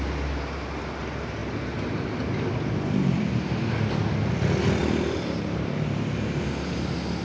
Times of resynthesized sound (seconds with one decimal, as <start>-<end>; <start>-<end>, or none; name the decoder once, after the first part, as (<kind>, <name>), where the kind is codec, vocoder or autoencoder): none

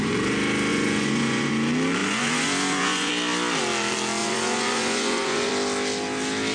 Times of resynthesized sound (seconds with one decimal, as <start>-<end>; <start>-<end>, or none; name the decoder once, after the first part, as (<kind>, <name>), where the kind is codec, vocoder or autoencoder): 0.7-1.5 (vocoder, Vocos); 2.0-3.1; 4.2-5.5

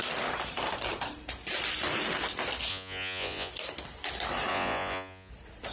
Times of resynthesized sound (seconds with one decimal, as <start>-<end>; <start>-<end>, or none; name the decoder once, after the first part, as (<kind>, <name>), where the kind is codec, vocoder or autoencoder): 2.7-3.5 (vocoder, Vocos); 4.5-5.3

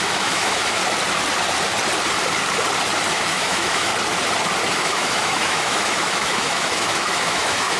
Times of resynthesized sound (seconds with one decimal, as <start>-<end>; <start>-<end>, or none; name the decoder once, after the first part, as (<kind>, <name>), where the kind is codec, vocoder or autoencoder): 0.0-0.8 (autoencoder, DAC-VAE); 3.1-3.9; 4.7-7.8

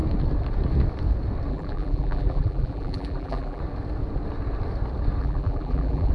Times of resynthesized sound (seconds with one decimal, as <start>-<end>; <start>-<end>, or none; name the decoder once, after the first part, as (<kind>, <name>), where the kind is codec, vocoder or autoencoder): 1.5-3.6 (vocoder, BigVGAN v2); 5.2-6.1

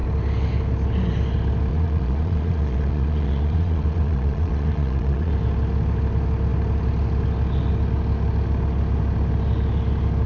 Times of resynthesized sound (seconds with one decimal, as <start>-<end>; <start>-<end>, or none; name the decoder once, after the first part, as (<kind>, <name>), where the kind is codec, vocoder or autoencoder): 1.7-5.3 (vocoder, Vocos)